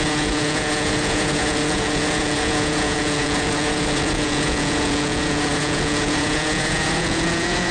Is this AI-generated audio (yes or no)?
yes